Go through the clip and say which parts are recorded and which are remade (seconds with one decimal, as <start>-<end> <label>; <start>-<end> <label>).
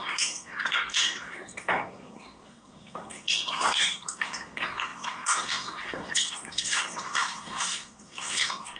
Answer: 0.0-8.8 remade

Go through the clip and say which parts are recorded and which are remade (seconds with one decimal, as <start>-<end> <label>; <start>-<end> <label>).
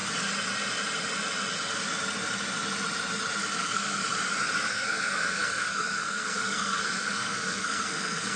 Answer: 0.0-3.6 recorded; 3.6-4.0 remade; 4.0-4.7 recorded; 4.7-8.4 remade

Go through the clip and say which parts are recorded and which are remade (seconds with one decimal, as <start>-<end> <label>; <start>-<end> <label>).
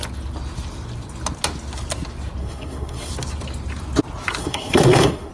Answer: 0.0-2.4 recorded; 2.4-3.1 remade; 3.1-4.4 recorded; 4.4-5.3 remade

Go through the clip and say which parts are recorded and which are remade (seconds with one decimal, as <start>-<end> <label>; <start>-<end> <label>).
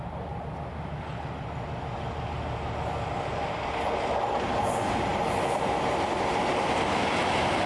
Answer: 0.0-7.7 recorded